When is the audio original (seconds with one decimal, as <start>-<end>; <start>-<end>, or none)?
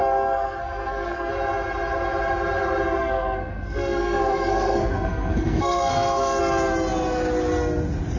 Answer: 1.3-3.0; 6.4-8.2